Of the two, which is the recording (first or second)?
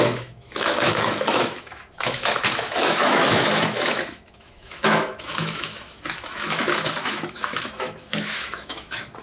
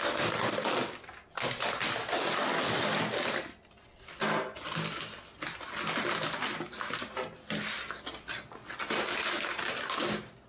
second